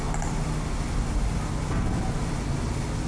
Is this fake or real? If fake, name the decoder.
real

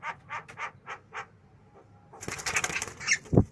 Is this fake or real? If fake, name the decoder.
real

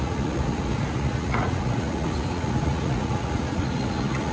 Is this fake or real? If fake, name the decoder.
fake, vocoder, Vocos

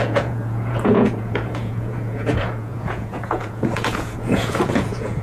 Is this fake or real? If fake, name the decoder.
fake, vocoder, Vocos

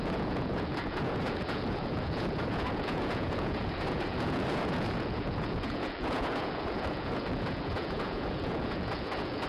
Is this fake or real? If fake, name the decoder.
fake, vocoder, Vocos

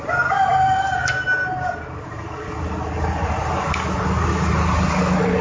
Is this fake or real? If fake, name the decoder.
real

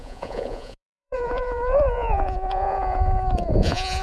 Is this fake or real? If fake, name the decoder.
fake, vocoder, Vocos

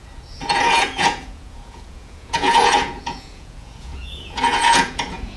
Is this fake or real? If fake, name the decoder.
fake, vocoder, Vocos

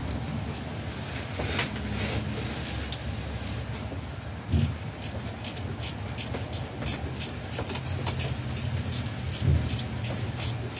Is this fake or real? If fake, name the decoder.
real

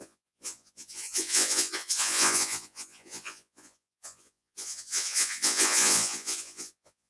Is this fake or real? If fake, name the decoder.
fake, vocoder, Vocos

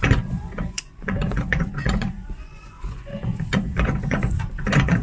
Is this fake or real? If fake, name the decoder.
fake, vocoder, Vocos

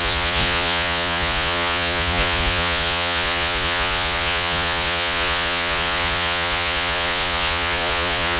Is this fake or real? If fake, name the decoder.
fake, vocoder, Vocos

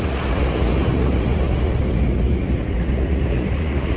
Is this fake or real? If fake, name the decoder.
fake, vocoder, Vocos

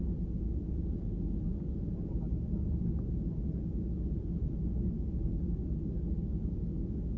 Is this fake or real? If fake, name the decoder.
real